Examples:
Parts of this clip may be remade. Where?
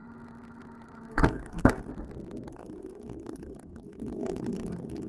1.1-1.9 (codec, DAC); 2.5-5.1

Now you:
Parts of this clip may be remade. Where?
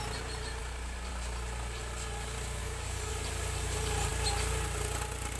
2.6-3.1 (codec, DAC)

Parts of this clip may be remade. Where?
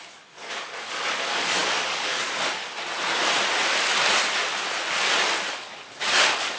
0.0-2.6 (codec, DAC); 5.5-6.6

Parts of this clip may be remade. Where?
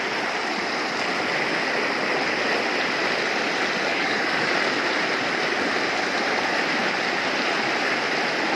3.9-4.5 (codec, DAC)